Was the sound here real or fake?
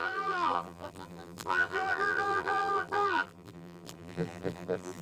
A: fake